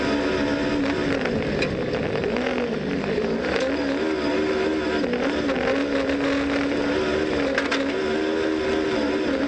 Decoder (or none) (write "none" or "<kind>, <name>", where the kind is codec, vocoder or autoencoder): none